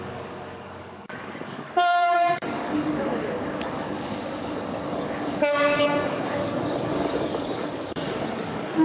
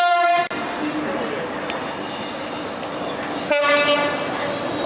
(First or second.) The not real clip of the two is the first